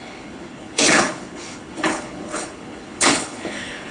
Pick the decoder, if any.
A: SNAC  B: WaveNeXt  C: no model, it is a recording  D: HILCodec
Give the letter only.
D